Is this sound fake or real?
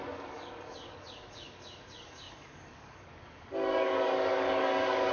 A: fake